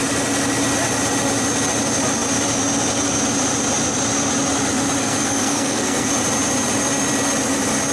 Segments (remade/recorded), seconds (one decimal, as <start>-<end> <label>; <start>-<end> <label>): 0.0-5.0 recorded; 5.0-6.1 remade; 6.1-7.9 recorded

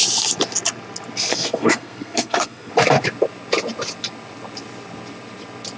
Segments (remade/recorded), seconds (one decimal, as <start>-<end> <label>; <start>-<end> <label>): 0.0-1.3 recorded; 1.3-2.7 remade; 2.7-5.8 recorded